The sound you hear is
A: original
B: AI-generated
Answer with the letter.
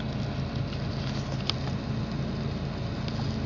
A